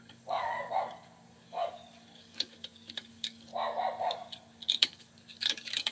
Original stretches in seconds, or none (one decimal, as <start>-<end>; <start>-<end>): 3.5-4.0